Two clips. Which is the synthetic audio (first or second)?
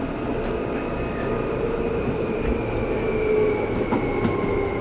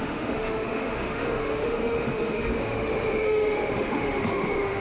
second